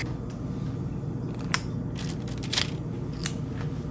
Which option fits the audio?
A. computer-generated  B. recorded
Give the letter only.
B